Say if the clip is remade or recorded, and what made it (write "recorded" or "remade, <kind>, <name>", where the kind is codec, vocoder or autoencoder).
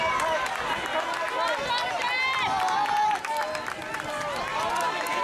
recorded